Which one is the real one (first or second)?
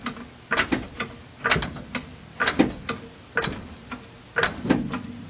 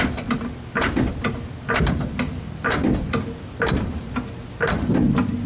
first